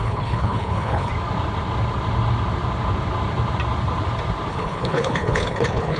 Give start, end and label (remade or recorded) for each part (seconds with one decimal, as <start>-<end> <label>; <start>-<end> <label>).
0.0-1.1 remade; 1.1-4.5 recorded; 4.5-6.0 remade